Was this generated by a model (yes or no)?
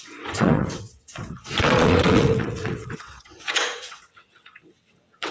yes